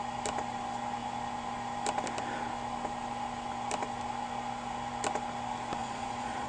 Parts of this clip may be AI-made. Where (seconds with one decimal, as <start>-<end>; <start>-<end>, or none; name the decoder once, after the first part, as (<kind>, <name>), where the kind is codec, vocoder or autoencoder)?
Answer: 5.8-6.5 (vocoder, Vocos)